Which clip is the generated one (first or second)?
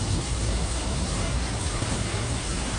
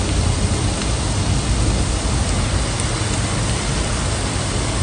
first